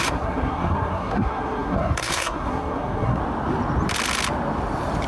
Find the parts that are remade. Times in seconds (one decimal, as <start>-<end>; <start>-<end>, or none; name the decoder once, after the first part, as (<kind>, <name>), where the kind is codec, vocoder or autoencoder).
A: 0.0-3.2 (codec, SNAC)